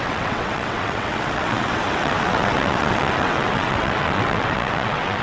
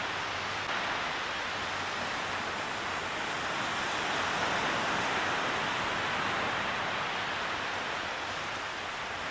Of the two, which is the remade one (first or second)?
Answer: first